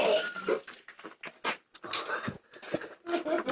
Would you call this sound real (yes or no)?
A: yes